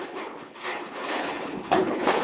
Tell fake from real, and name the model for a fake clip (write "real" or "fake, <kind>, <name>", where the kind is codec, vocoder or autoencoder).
fake, codec, HILCodec